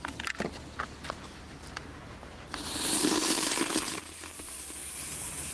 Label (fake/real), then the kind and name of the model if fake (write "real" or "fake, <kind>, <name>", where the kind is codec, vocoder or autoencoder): real